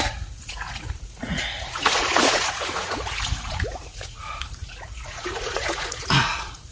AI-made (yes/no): yes